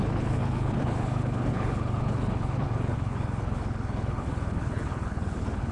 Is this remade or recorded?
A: remade